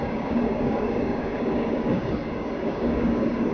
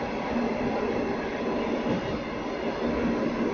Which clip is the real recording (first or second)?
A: second